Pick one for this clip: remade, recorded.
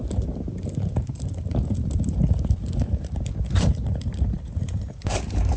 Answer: remade